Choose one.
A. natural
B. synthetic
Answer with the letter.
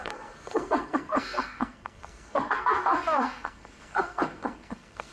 B